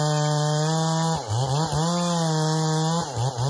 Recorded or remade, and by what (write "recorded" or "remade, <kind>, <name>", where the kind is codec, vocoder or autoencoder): recorded